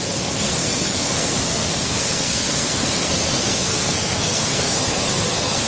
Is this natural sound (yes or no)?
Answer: no